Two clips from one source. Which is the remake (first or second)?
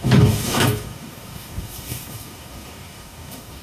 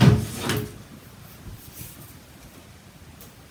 first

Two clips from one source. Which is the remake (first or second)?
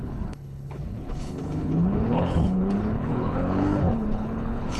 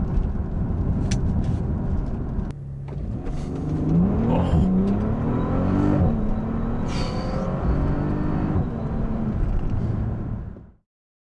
first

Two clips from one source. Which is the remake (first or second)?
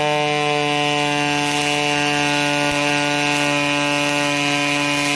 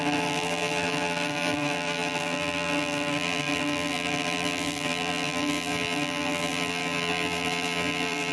second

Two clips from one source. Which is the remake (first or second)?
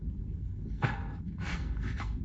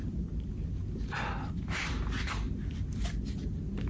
first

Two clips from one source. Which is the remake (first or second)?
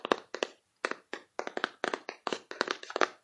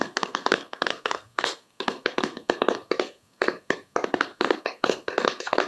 second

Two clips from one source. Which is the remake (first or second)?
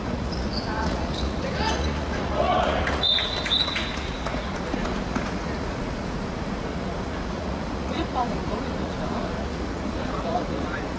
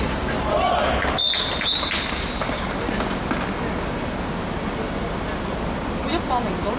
first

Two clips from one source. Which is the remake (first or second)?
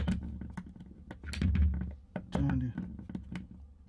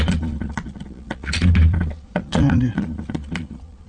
second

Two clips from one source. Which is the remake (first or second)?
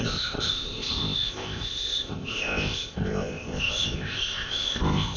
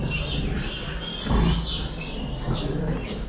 first